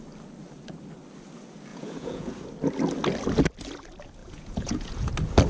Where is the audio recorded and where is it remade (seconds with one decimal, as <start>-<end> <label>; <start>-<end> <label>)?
0.0-1.7 recorded; 1.7-2.4 remade; 2.4-4.2 recorded; 4.2-5.1 remade; 5.1-5.5 recorded